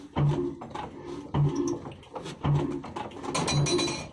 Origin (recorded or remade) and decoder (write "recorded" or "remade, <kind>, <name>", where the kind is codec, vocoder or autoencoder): recorded